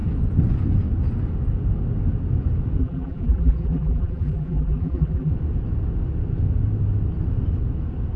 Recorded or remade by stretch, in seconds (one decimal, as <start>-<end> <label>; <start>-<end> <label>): 0.0-2.8 recorded; 2.8-5.3 remade; 5.3-8.2 recorded